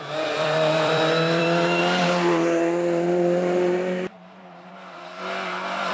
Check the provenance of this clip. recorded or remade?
remade